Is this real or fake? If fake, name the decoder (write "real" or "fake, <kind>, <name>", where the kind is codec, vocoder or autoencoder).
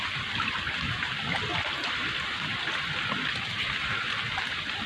real